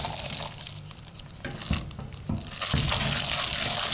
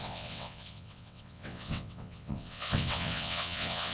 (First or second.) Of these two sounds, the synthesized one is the second